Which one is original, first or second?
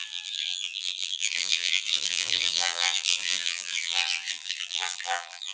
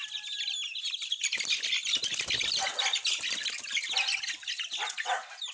second